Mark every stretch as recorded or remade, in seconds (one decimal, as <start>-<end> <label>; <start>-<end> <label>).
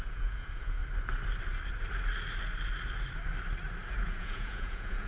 0.0-0.8 remade; 0.8-3.9 recorded; 3.9-5.1 remade